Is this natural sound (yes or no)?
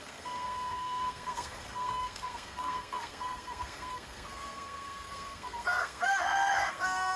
no